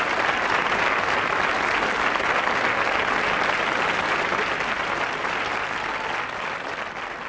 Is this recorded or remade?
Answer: recorded